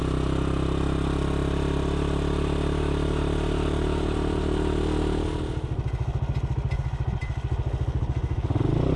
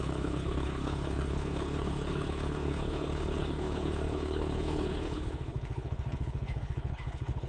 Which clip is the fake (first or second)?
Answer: second